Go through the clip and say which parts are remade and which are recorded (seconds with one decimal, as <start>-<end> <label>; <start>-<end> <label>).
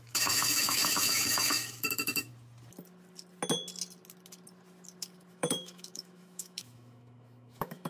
0.0-2.3 remade; 2.3-5.3 recorded; 5.3-7.9 remade